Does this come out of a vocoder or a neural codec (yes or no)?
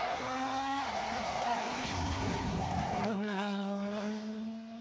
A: yes